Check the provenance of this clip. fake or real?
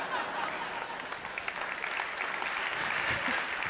real